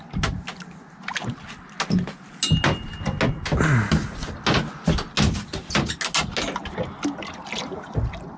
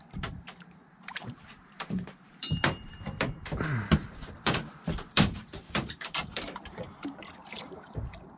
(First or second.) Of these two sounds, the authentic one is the first